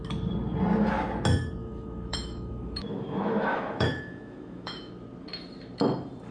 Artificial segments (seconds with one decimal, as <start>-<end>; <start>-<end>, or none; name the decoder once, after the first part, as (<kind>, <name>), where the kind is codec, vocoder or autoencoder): 1.6-4.9 (autoencoder, DAC-VAE)